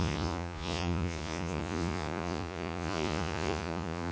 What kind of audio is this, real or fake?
fake